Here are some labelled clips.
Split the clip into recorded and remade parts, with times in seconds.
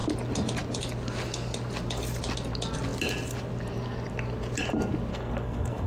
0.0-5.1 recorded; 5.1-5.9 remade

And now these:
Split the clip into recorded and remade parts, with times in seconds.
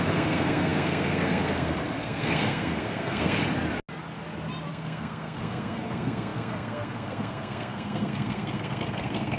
0.0-3.4 remade; 3.4-4.7 recorded; 4.7-9.4 remade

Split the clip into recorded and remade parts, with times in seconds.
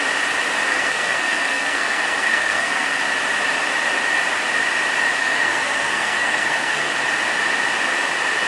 0.0-0.7 recorded; 0.7-3.0 remade; 3.0-5.2 recorded; 5.2-6.9 remade; 6.9-8.5 recorded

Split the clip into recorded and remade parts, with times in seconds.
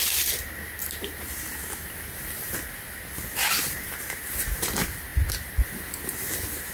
0.0-6.7 recorded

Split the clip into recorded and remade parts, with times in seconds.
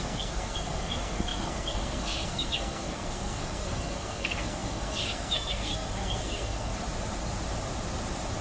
0.0-6.7 remade; 6.7-8.4 recorded